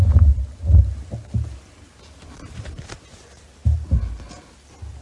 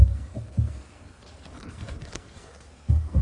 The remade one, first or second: second